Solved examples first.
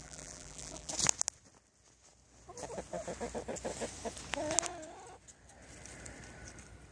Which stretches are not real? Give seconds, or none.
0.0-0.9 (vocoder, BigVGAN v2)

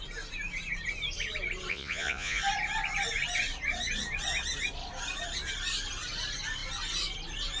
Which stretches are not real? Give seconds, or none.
1.7-2.4 (vocoder, Vocos)

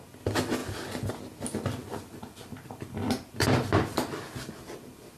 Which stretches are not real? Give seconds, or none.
1.8-5.2 (vocoder, BigVGAN v2)

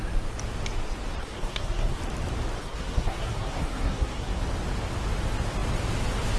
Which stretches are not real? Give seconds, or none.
1.2-2.0 (codec, SNAC); 2.6-4.4